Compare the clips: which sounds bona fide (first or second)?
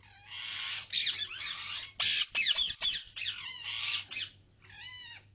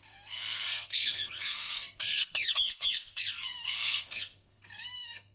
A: first